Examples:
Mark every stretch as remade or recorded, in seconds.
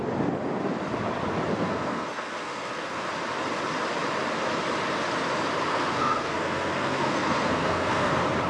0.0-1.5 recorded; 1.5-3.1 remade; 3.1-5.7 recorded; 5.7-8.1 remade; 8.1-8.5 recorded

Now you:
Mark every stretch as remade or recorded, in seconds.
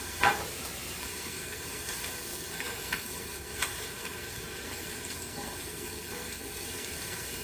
0.0-0.4 remade; 0.4-1.0 recorded; 1.0-7.4 remade